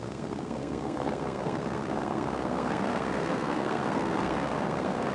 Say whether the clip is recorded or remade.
remade